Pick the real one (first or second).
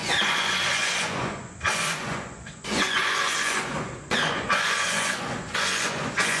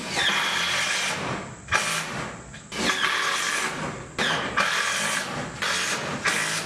second